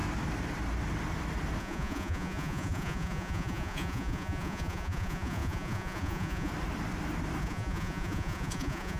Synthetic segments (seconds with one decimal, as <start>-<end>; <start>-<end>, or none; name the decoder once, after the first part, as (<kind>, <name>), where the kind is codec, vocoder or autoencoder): 1.6-6.5 (vocoder, Vocos); 7.4-9.0

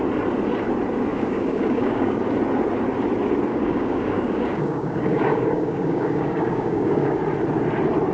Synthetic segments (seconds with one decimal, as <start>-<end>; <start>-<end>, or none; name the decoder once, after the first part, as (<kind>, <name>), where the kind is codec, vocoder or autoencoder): 1.1-2.2 (codec, DAC); 3.5-7.2